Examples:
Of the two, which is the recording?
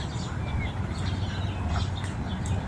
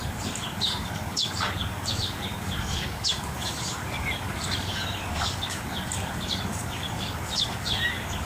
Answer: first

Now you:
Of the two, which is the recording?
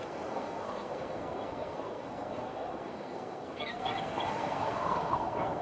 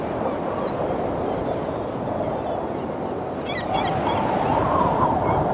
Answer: second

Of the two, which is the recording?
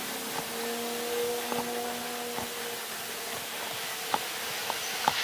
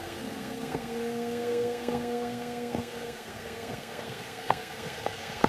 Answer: first